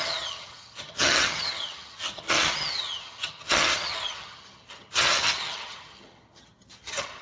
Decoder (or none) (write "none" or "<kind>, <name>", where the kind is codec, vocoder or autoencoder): vocoder, HiFi-GAN